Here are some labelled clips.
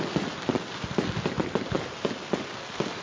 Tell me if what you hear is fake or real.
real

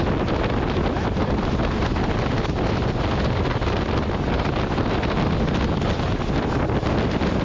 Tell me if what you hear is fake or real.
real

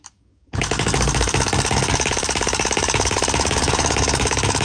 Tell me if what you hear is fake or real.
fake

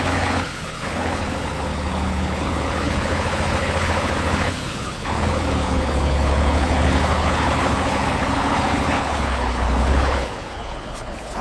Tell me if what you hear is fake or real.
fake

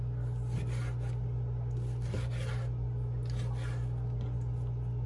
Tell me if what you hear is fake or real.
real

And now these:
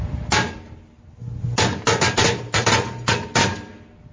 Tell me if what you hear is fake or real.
real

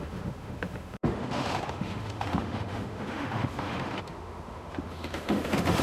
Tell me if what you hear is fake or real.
fake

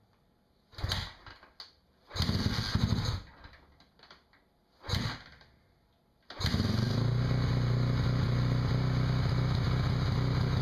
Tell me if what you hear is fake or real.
real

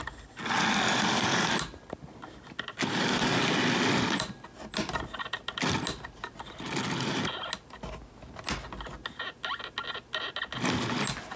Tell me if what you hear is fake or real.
real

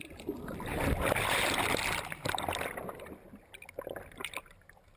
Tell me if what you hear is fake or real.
real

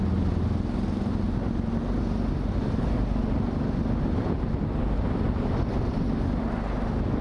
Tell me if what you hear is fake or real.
real